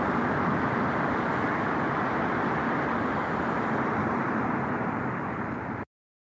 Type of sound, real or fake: real